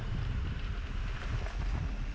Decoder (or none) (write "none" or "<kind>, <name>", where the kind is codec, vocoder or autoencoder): none